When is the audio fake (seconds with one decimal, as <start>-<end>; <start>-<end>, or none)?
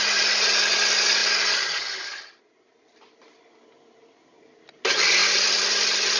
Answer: 5.2-5.8